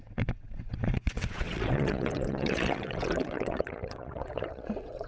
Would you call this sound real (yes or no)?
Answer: no